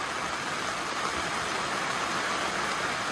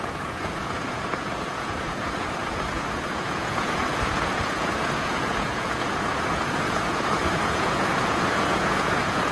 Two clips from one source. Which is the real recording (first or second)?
first